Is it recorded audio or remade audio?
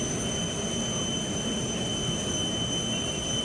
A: recorded